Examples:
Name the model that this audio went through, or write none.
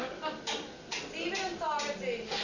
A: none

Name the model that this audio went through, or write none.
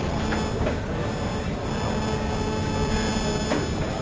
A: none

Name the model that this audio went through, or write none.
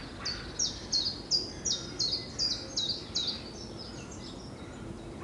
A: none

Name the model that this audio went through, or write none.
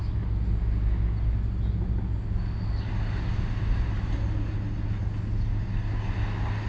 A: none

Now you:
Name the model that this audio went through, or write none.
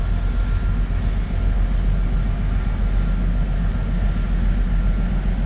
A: none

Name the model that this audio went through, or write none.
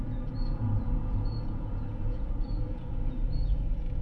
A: vocoder, Vocos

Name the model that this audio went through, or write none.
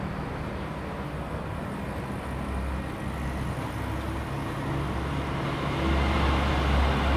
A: none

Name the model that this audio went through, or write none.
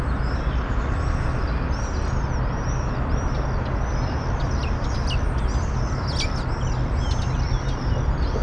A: none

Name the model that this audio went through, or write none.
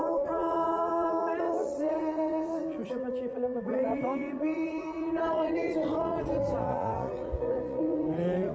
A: vocoder, Vocos